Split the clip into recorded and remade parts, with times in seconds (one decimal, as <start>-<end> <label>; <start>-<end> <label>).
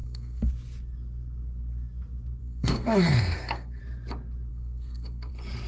0.0-0.5 remade; 0.5-2.4 recorded; 2.4-3.8 remade; 3.8-4.5 recorded; 4.5-5.3 remade; 5.3-5.7 recorded